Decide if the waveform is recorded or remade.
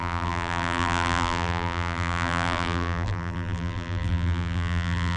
remade